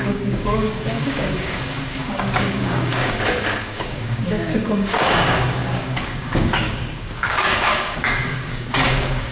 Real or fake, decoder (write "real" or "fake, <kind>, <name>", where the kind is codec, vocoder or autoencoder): fake, codec, DAC